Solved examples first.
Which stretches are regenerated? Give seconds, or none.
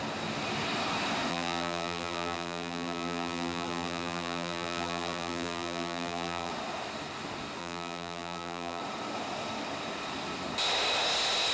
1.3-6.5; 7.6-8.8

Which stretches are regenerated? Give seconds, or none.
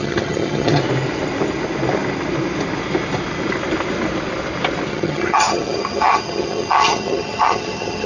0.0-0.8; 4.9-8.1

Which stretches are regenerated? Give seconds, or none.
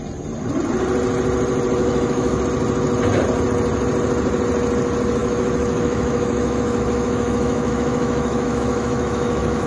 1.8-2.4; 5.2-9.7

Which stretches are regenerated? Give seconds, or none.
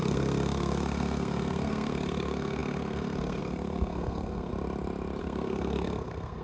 0.0-4.5; 5.2-6.4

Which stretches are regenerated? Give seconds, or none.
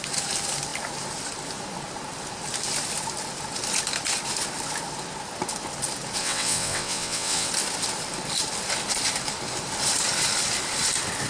6.2-7.5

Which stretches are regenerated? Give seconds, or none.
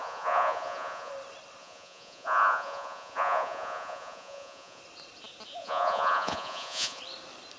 0.0-1.1; 1.6-4.8; 5.6-7.0